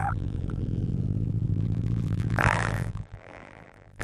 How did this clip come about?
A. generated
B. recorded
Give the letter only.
A